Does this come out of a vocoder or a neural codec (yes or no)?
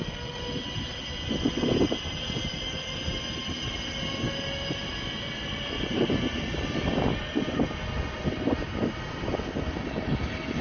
no